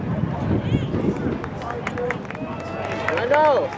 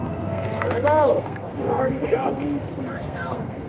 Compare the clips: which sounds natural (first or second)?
first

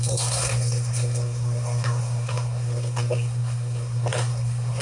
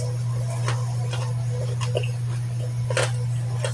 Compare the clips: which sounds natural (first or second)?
second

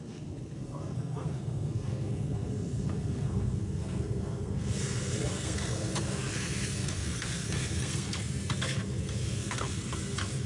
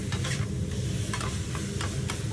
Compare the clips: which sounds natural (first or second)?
second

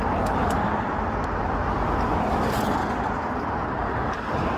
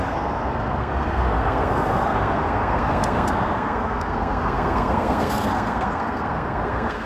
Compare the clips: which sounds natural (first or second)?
first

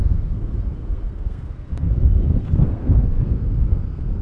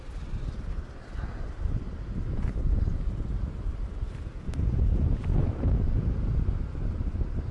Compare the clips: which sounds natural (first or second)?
second